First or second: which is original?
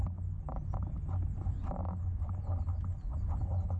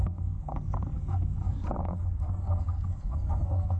first